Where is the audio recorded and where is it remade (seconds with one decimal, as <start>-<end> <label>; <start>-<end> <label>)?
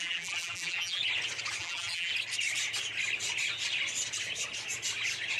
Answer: 0.0-1.0 remade; 1.0-1.6 recorded; 1.6-2.1 remade; 2.1-5.4 recorded